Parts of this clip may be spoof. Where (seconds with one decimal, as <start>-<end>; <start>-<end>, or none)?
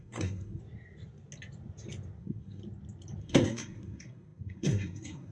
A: 0.0-0.6; 2.2-2.6; 3.2-5.3